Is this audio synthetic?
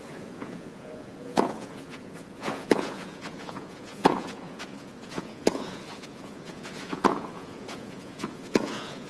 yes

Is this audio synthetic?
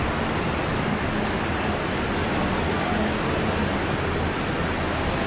no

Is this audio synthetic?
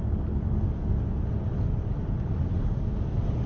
no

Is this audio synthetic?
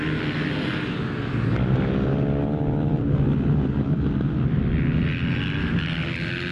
no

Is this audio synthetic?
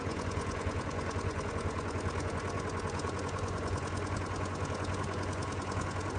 yes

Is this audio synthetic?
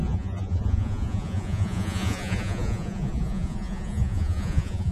yes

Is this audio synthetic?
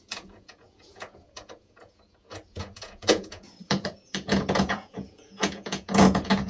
yes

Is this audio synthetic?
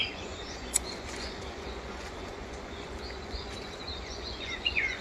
yes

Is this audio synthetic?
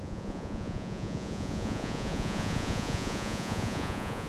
yes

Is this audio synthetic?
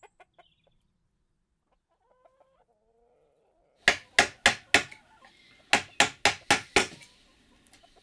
no